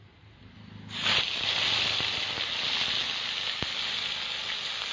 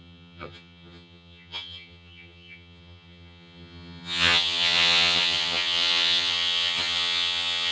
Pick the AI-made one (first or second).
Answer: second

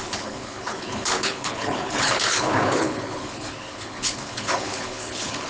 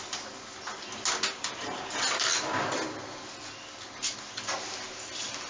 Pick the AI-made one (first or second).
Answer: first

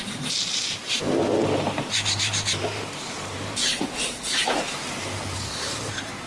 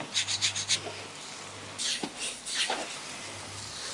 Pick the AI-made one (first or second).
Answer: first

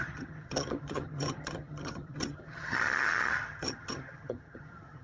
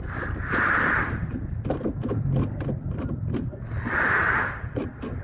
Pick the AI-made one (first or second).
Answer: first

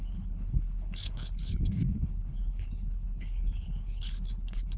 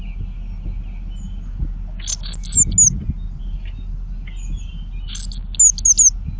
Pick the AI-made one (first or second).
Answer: first